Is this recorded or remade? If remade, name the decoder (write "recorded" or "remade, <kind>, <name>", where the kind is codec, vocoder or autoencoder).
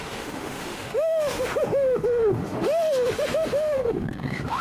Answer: remade, autoencoder, DAC-VAE